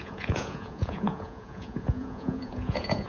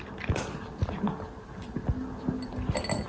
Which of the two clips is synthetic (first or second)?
first